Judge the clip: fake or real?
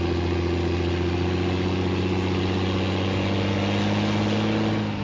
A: real